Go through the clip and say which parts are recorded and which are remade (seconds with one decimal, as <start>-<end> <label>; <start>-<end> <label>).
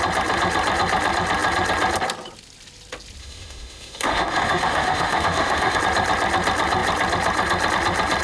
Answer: 0.0-3.2 recorded; 3.2-5.8 remade; 5.8-8.2 recorded